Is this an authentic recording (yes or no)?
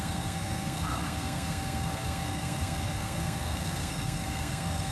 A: no